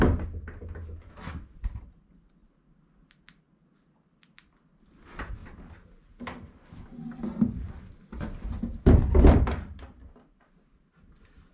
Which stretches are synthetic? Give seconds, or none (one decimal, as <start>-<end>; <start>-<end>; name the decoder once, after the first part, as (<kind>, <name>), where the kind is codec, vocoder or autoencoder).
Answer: none